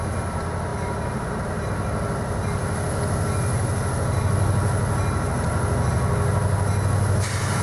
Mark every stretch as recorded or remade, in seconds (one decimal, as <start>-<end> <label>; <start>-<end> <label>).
0.0-0.7 recorded; 0.7-1.7 remade; 1.7-7.6 recorded